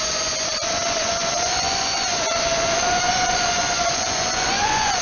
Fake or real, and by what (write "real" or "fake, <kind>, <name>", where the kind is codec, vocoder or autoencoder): fake, vocoder, Vocos